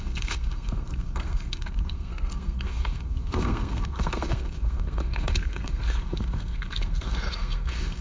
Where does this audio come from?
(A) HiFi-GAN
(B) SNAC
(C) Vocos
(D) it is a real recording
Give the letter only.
B